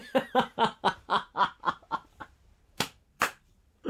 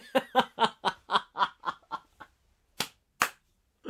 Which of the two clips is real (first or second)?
second